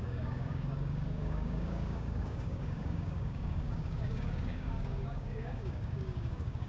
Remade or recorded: remade